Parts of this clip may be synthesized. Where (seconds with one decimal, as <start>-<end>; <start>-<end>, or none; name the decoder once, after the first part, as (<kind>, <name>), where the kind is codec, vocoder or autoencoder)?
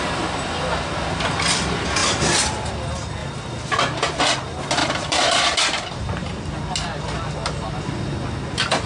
2.0-2.7 (vocoder, BigVGAN v2); 3.2-4.2; 4.8-6.4